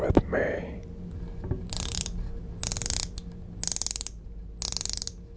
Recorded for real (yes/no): yes